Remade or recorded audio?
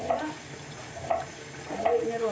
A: recorded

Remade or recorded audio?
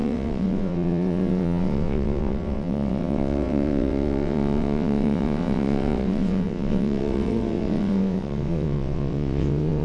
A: remade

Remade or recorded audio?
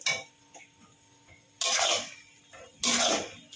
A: recorded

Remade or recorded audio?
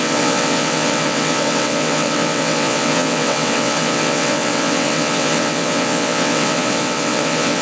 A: remade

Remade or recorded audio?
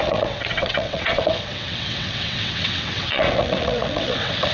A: remade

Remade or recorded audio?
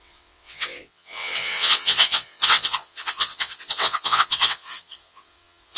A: remade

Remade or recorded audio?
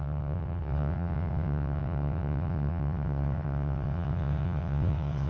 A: remade